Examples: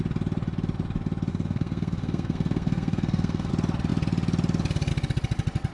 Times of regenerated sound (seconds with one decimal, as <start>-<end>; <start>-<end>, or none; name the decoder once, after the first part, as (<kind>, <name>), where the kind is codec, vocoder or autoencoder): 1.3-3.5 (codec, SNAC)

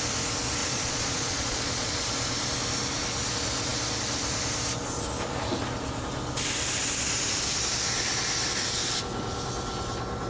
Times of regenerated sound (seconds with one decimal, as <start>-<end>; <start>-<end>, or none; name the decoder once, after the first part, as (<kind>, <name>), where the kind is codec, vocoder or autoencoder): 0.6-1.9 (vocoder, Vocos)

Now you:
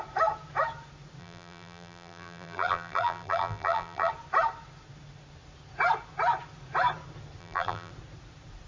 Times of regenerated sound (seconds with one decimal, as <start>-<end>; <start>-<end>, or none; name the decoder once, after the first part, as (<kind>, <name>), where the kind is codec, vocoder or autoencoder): 1.2-4.1 (vocoder, BigVGAN v2); 7.4-7.9

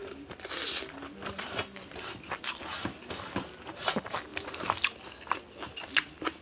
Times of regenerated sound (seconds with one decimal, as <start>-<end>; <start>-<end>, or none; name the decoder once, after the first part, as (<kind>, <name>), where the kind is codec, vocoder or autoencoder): 0.0-3.2 (vocoder, BigVGAN v2); 4.3-5.9